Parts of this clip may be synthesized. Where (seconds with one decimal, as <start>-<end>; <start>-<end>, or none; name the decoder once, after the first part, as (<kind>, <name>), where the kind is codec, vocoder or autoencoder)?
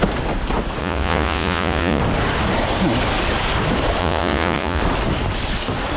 0.8-2.0 (vocoder, Vocos); 4.0-4.8